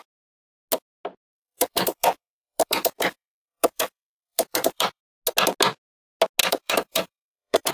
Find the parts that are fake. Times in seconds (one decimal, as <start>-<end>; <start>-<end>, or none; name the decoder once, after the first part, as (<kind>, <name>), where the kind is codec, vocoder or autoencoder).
1.1-5.0 (codec, DAC); 6.4-7.7